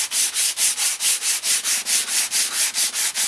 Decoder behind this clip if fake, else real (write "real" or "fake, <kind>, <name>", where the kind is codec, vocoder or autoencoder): real